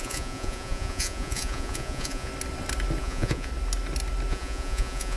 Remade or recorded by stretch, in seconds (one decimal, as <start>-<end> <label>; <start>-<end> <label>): 0.0-2.3 remade; 2.3-3.0 recorded; 3.0-3.5 remade; 3.5-4.3 recorded; 4.3-5.2 remade